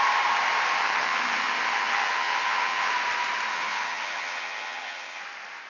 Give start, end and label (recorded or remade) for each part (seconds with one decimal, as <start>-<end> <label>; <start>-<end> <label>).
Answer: 0.0-0.8 recorded; 0.8-2.9 remade; 2.9-3.5 recorded; 3.5-5.2 remade; 5.2-5.7 recorded